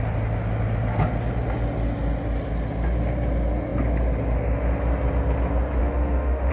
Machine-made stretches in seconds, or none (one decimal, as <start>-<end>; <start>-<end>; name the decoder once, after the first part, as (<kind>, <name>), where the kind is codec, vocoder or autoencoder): 5.8-6.5 (autoencoder, DAC-VAE)